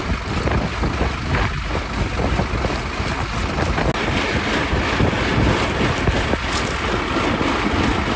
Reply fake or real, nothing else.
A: real